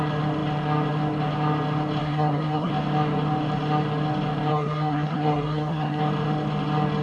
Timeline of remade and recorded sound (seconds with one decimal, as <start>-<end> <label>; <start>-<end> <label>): 0.0-2.0 recorded; 2.0-2.7 remade; 2.7-4.5 recorded; 4.5-6.0 remade; 6.0-7.0 recorded